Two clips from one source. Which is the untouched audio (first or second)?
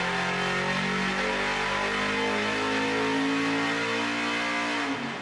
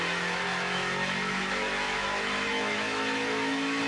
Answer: first